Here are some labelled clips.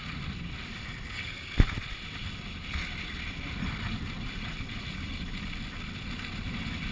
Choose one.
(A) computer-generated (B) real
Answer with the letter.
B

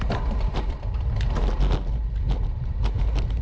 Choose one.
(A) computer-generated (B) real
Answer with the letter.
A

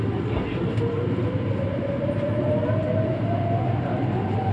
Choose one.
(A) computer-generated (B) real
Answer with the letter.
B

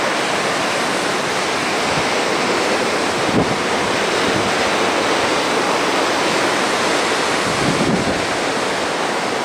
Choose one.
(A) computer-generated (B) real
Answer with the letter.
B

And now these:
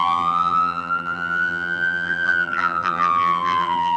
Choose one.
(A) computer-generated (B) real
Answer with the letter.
A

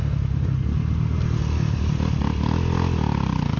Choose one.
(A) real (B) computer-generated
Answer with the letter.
A